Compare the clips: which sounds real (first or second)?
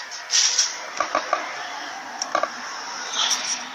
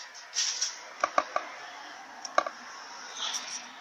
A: second